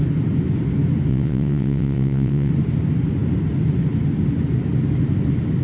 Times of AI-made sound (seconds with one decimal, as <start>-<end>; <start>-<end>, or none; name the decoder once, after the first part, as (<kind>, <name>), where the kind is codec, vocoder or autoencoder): 1.1-2.5 (vocoder, WaveNeXt)